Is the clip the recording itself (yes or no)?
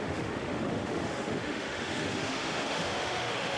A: no